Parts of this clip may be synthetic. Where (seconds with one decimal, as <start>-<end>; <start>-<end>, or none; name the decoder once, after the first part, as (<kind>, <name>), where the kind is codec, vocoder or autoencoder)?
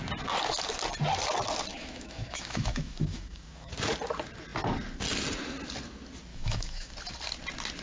1.7-3.7 (autoencoder, DAC-VAE); 6.3-6.9